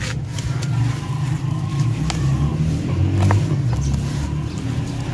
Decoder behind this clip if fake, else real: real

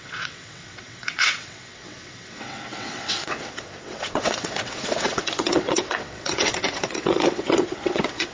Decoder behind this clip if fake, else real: fake, vocoder, WaveNeXt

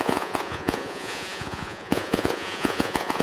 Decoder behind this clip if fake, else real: fake, vocoder, Vocos